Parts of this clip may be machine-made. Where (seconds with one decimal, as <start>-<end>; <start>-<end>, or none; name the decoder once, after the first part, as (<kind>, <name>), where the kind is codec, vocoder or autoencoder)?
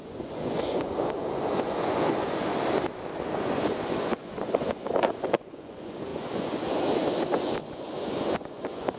0.0-2.5 (vocoder, Vocos); 3.3-9.0